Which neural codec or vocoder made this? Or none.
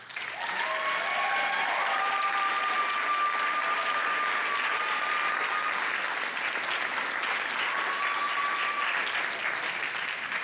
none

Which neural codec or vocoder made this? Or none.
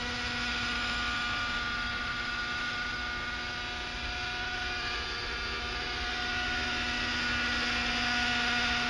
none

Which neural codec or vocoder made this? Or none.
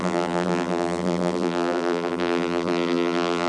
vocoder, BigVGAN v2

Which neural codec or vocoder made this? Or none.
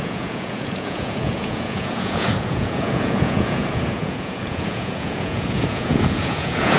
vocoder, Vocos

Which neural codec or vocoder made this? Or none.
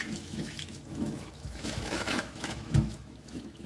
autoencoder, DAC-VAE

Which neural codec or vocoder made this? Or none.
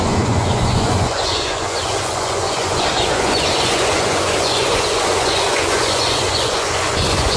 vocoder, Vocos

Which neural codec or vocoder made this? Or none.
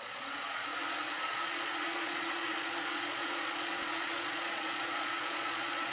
vocoder, Vocos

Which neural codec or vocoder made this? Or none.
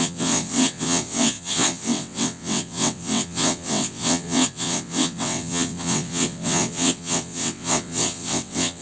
vocoder, WaveNeXt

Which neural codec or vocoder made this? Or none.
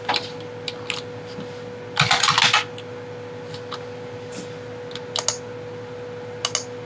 none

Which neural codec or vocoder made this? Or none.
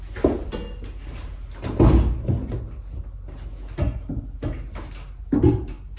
none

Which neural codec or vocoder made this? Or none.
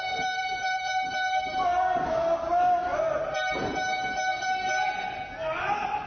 none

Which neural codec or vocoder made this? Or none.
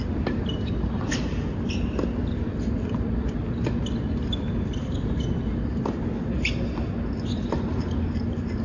none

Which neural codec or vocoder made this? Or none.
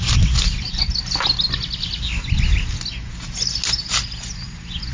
none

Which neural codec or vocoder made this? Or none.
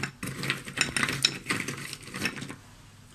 none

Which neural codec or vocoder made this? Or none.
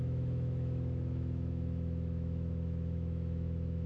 autoencoder, DAC-VAE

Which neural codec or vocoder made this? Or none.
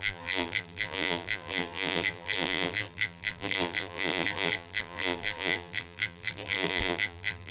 vocoder, BigVGAN v2